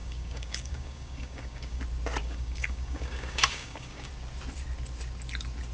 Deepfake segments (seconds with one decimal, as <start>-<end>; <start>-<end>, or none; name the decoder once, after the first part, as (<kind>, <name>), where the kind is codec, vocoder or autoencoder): 0.0-1.8 (codec, DAC); 2.2-4.1